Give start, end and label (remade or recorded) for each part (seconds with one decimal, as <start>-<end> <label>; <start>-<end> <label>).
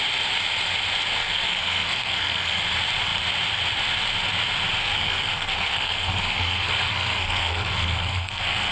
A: 0.0-1.2 recorded; 1.2-2.6 remade; 2.6-4.8 recorded; 4.8-8.7 remade